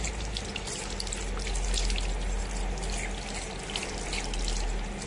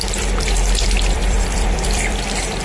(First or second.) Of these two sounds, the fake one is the second